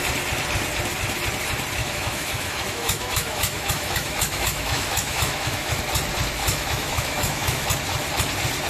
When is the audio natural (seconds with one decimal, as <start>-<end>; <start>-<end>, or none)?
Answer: 0.0-1.8; 5.8-6.4; 7.7-8.7